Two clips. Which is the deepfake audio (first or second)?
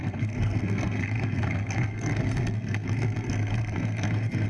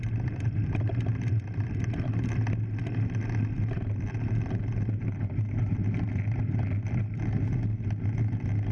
first